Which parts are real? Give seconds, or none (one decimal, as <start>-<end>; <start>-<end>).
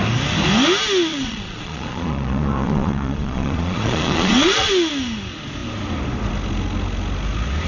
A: 0.0-1.1; 4.7-7.7